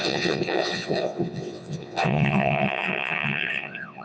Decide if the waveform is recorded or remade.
remade